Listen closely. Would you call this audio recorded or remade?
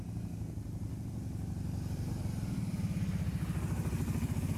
recorded